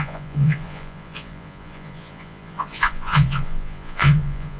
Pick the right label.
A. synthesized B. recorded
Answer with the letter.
A